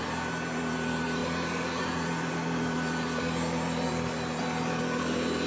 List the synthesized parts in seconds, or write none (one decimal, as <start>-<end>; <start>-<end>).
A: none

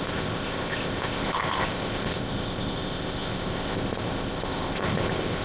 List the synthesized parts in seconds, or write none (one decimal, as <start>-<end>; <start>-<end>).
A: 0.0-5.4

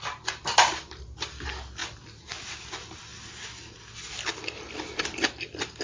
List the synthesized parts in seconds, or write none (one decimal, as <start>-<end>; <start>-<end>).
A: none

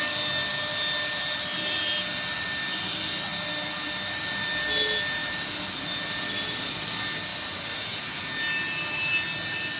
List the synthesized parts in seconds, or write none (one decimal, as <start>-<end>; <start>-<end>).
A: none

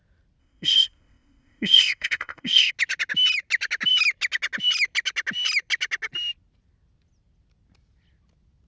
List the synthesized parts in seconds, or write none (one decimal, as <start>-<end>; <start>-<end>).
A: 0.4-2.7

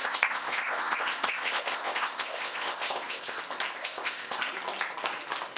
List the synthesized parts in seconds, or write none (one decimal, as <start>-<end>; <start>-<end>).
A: 0.0-3.4; 3.8-4.4